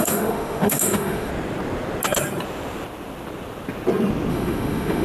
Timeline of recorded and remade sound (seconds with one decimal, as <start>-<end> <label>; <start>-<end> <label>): 0.0-1.3 remade; 1.3-4.3 recorded; 4.3-5.0 remade